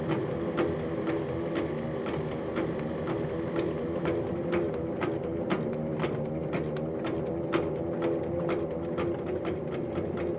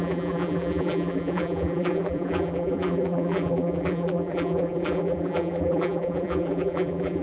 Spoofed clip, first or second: second